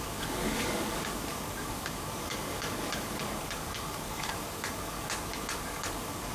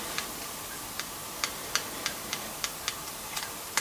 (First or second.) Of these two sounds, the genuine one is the second